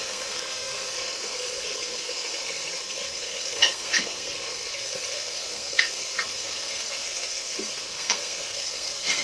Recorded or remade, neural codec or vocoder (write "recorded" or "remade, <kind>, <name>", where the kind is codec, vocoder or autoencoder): remade, codec, SNAC